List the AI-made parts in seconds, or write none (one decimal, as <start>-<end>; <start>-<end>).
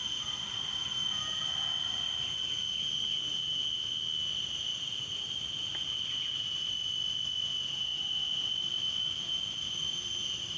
4.7-6.6